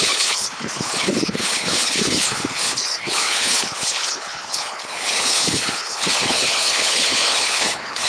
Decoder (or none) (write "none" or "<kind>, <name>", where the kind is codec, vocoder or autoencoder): codec, HILCodec